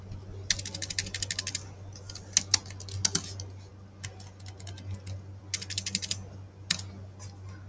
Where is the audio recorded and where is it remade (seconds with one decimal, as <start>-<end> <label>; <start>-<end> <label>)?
0.0-7.7 recorded